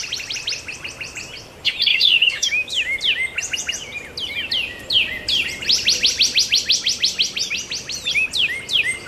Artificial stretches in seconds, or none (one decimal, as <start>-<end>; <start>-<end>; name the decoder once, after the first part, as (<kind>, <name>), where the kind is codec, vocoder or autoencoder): 1.9-3.0 (autoencoder, DAC-VAE)